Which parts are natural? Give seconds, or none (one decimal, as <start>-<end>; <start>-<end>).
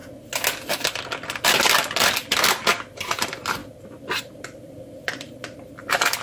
0.0-2.3